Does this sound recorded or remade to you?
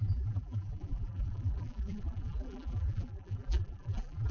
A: remade